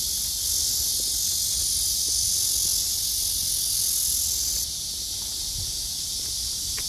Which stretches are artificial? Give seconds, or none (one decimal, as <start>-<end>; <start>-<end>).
none